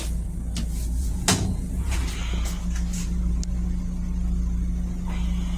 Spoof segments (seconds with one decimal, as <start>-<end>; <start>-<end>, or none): 1.0-2.0